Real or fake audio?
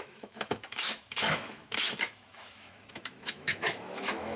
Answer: fake